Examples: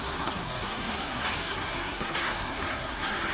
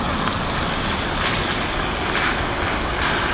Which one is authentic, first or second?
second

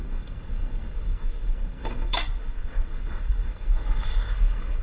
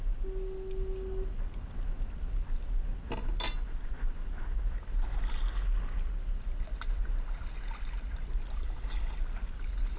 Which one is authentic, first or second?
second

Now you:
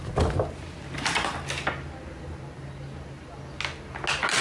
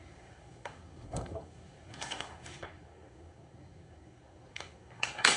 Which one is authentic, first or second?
first